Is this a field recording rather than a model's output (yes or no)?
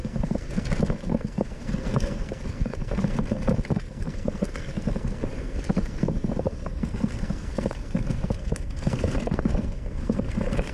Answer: no